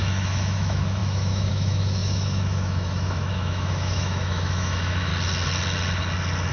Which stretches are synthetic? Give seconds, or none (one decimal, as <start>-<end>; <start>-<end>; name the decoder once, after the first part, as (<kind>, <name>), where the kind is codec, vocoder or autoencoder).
0.0-5.1 (autoencoder, DAC-VAE)